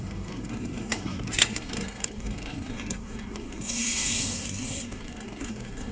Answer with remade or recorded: remade